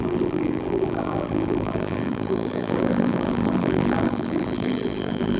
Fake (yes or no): yes